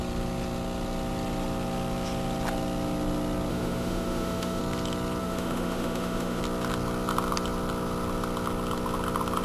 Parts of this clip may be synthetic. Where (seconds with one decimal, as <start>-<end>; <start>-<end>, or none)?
3.5-4.6; 5.2-6.4

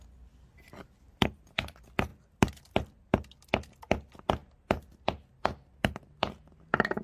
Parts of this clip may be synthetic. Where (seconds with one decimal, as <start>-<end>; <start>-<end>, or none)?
none

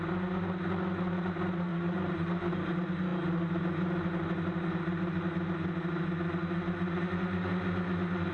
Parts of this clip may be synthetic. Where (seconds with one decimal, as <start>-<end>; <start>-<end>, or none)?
1.7-2.7

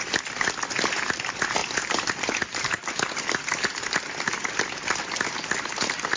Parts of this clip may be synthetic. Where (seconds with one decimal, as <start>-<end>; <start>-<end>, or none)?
1.6-2.9

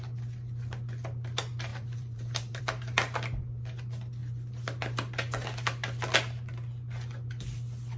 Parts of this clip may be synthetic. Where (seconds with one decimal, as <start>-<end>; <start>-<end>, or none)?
1.7-2.6